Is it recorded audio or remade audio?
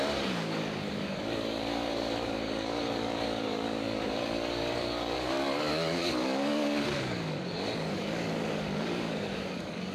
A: remade